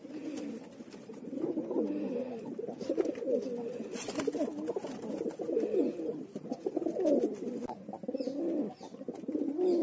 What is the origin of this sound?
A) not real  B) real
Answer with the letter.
B